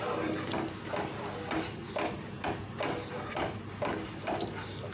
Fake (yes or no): no